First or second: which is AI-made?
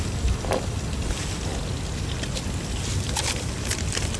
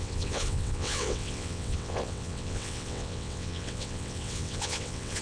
second